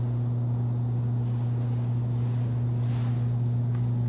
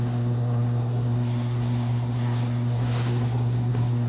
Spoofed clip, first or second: second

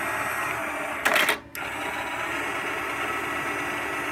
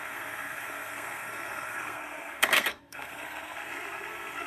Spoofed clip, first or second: second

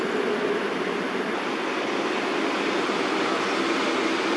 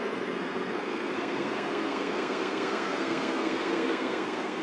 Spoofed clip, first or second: second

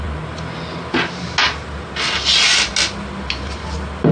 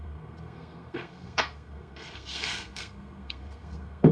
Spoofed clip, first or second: second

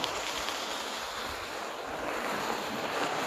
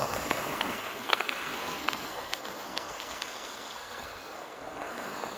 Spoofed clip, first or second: second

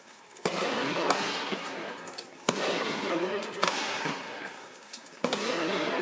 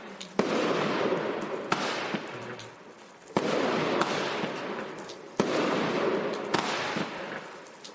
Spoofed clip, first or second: first